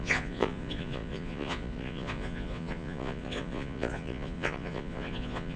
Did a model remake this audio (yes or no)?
yes